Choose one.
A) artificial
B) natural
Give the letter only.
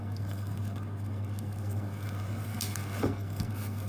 A